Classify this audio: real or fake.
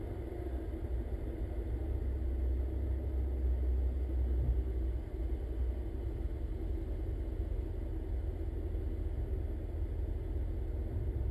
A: real